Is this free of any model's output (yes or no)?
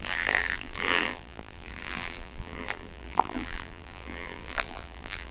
no